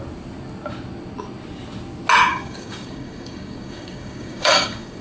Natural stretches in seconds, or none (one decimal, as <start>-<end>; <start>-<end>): 0.0-2.3